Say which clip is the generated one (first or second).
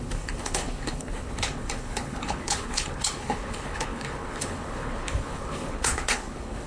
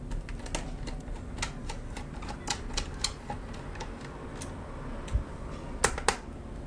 first